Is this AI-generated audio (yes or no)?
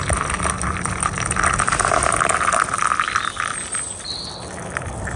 no